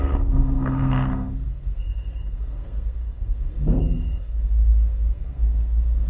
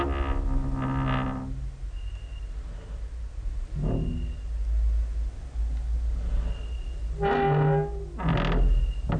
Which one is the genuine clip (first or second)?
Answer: second